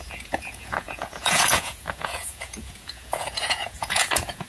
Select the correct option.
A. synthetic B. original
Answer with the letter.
A